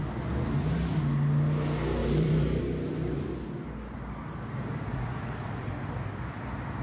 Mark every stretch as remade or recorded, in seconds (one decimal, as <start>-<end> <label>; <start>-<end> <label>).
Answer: 0.0-2.0 recorded; 2.0-2.6 remade; 2.6-6.8 recorded